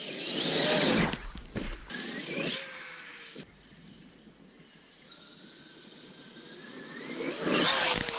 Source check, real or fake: real